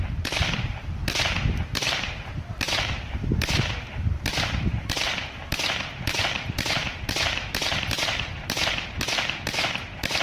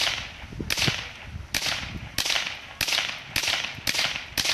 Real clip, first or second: second